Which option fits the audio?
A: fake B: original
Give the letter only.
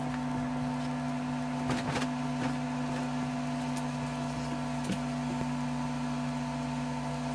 B